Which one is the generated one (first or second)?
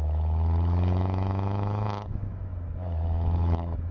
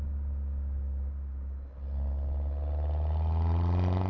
first